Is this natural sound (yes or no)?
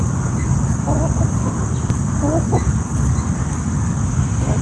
yes